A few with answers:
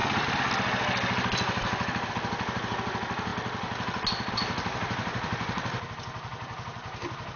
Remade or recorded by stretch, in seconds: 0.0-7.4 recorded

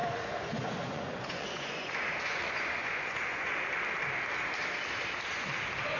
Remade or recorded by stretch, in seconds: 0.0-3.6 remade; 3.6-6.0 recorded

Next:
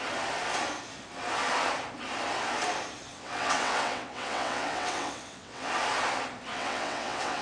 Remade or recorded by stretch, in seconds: 0.0-3.1 recorded; 3.1-5.7 remade; 5.7-6.5 recorded; 6.5-7.4 remade

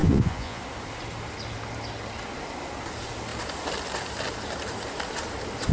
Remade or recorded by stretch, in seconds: 0.0-0.6 remade; 0.6-5.7 recorded

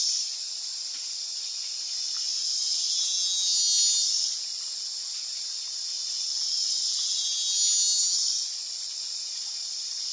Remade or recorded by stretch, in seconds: 0.0-10.1 recorded

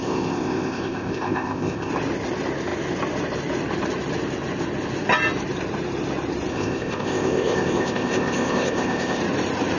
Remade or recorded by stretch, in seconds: 0.0-1.9 remade; 1.9-6.5 recorded; 6.5-9.2 remade; 9.2-9.8 recorded